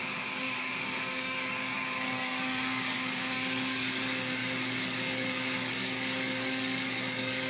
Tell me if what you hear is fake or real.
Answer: fake